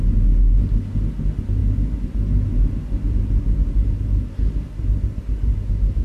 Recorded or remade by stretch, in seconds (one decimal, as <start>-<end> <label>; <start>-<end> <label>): 0.0-6.0 recorded